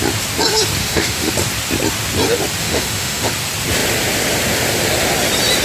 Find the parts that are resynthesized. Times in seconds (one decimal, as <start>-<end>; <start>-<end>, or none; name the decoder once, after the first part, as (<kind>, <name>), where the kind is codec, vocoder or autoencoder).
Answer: 0.8-1.3 (autoencoder, DAC-VAE); 2.6-3.3